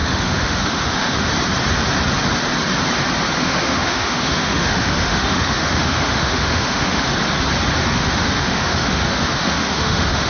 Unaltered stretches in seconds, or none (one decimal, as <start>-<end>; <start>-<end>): 1.3-3.4; 7.1-7.8